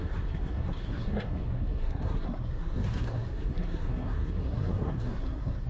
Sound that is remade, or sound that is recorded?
remade